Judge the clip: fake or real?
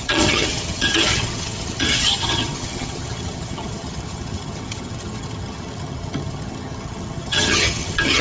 fake